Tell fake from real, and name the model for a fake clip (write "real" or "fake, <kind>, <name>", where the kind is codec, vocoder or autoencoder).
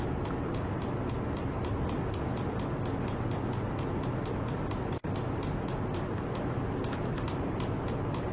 real